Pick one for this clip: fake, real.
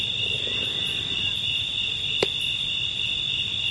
real